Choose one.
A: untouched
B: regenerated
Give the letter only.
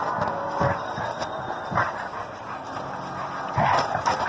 A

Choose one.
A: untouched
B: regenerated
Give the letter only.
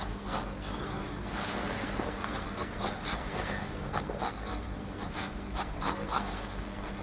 B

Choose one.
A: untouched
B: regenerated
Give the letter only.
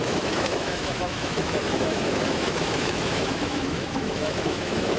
B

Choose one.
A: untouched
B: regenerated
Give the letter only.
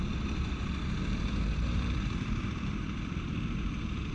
B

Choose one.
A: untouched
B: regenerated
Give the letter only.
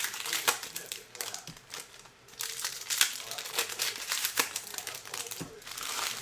B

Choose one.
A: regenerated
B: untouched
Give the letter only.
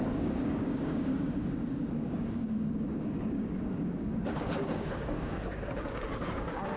A